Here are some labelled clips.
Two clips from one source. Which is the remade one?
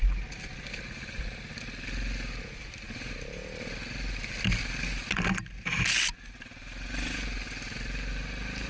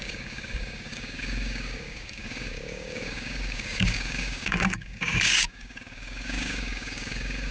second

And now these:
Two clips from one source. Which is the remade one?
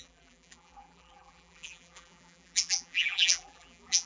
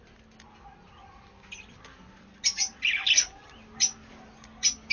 first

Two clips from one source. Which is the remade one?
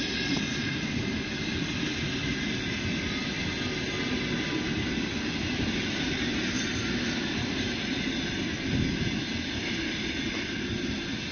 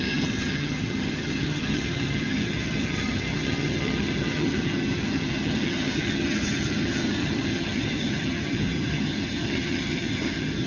second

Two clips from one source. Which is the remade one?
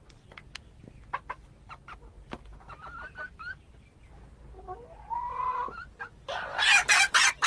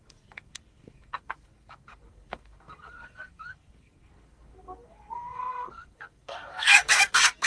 second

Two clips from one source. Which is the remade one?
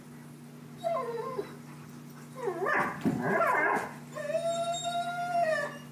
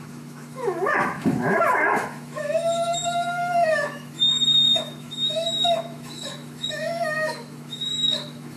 second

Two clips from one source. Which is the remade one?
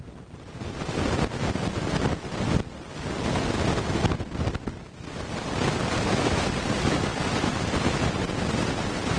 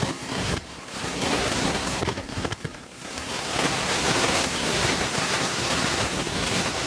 second